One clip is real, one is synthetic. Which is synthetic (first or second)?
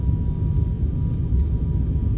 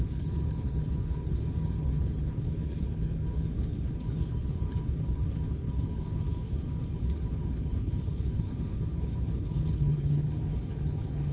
second